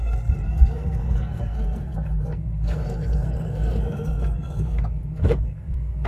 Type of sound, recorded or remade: remade